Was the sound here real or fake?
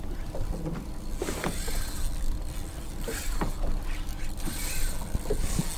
real